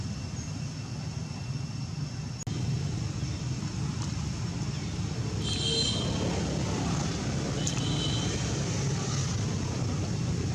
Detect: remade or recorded recorded